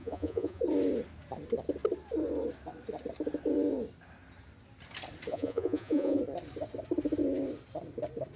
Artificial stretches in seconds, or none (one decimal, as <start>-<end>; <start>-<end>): 0.0-0.6; 5.3-6.2